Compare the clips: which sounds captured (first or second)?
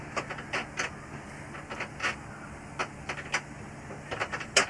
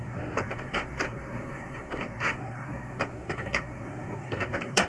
first